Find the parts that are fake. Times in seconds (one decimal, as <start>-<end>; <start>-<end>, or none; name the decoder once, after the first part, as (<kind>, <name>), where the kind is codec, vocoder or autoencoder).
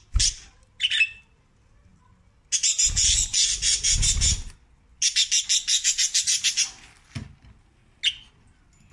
0.0-1.9 (vocoder, BigVGAN v2); 6.2-7.8; 8.3-8.9